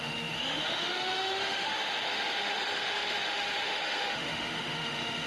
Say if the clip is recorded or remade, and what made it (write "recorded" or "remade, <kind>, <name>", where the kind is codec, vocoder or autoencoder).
remade, autoencoder, DAC-VAE